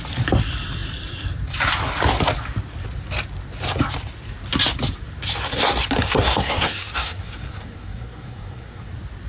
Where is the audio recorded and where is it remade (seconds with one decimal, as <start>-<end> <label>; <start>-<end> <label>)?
0.0-6.1 recorded; 6.1-8.9 remade; 8.9-9.3 recorded